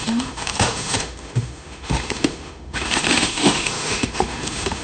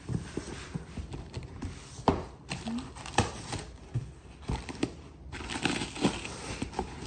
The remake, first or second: first